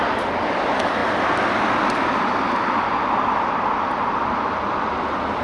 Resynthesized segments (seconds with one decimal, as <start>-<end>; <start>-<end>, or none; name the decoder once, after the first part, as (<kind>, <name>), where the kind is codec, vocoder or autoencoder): none